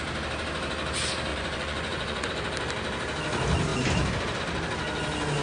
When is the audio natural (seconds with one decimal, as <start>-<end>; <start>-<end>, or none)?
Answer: 0.0-1.3; 2.3-5.4